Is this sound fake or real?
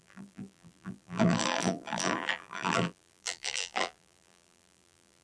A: fake